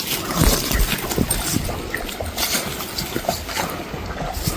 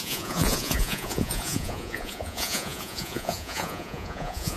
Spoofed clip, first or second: second